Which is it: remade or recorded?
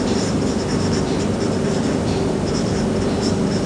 remade